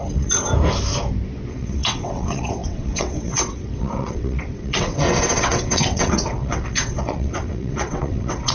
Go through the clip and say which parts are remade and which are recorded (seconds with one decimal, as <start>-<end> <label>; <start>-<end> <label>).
0.0-0.5 remade; 0.5-1.5 recorded; 1.5-8.5 remade